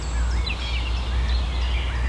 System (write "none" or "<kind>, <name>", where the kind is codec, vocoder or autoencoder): none